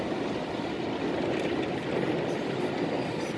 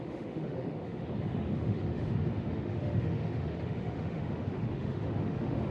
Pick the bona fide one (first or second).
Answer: first